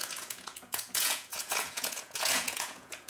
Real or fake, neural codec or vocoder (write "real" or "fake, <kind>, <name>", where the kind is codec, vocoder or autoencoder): fake, vocoder, Vocos